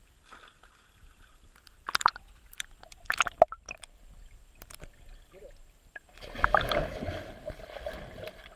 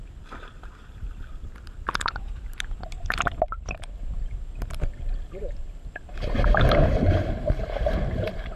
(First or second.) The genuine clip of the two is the first